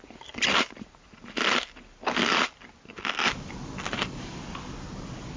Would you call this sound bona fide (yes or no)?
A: yes